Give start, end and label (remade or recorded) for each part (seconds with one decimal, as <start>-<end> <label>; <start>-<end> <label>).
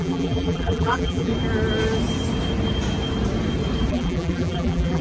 0.0-1.3 remade; 1.3-3.9 recorded; 3.9-5.0 remade